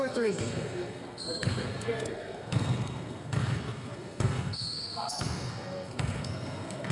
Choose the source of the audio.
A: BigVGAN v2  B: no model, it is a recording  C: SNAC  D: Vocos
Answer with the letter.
C